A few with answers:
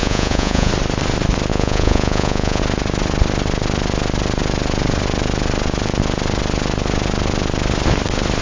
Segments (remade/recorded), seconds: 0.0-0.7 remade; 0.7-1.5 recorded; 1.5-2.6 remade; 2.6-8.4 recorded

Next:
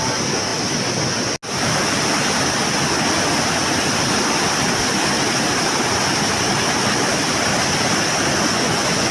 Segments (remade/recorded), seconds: 0.0-8.5 recorded; 8.5-9.1 remade

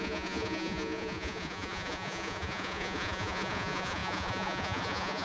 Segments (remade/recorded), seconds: 0.0-5.2 remade

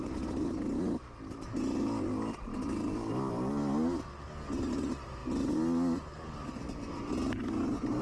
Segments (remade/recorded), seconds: 0.0-8.0 recorded